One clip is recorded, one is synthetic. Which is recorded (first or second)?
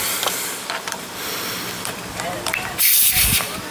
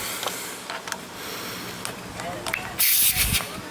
second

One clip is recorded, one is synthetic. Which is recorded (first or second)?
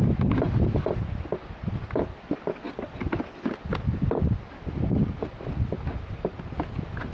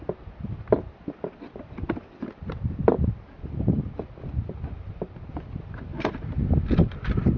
first